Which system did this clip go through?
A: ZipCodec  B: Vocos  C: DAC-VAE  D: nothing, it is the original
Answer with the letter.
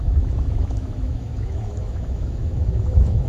C